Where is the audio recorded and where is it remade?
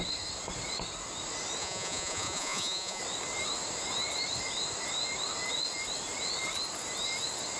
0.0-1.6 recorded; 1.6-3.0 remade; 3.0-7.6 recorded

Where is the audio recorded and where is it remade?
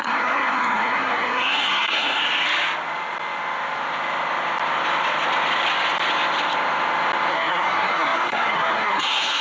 0.0-2.2 remade; 2.2-7.3 recorded; 7.3-9.4 remade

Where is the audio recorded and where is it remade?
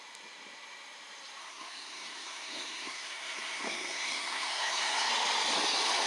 0.0-1.4 recorded; 1.4-5.1 remade; 5.1-6.1 recorded